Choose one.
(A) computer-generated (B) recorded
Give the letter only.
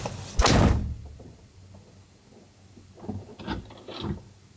B